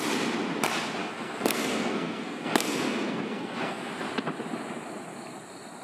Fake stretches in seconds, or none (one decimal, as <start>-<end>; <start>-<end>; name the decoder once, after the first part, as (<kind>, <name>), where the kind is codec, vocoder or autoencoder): 1.0-3.9 (codec, SNAC)